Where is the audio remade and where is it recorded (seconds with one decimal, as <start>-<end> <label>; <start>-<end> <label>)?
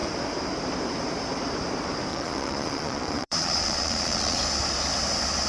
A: 0.0-2.1 recorded; 2.1-4.4 remade; 4.4-5.5 recorded